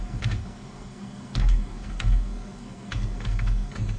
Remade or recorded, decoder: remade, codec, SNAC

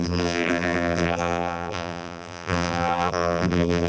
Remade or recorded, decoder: remade, vocoder, BigVGAN v2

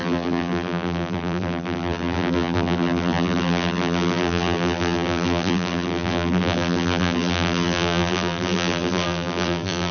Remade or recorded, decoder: remade, vocoder, BigVGAN v2